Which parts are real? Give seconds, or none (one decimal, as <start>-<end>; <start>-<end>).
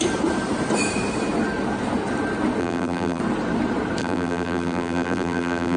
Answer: 0.0-2.6; 3.2-4.0